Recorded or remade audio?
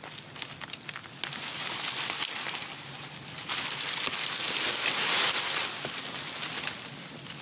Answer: recorded